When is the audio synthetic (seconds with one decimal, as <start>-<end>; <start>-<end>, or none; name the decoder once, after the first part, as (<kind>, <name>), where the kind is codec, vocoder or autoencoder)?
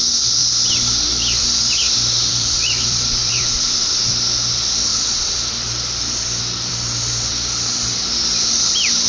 2.3-4.0 (vocoder, BigVGAN v2); 4.9-6.7